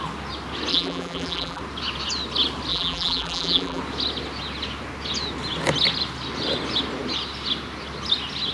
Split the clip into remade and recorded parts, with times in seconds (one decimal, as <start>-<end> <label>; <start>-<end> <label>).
0.0-0.7 recorded; 0.7-1.6 remade; 1.6-2.7 recorded; 2.7-3.8 remade; 3.8-8.5 recorded